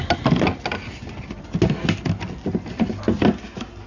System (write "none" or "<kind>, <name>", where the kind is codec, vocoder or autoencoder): none